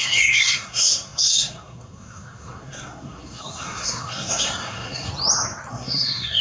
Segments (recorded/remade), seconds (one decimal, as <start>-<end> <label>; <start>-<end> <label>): 0.0-5.1 remade; 5.1-5.7 recorded; 5.7-6.4 remade